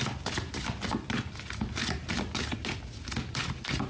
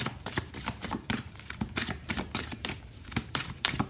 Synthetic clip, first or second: second